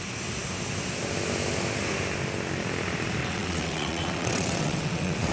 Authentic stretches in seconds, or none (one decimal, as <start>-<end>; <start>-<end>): 0.0-3.2